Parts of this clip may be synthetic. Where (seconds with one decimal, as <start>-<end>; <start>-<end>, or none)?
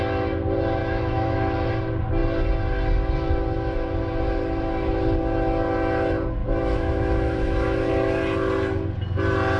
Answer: 0.8-1.7; 6.4-7.9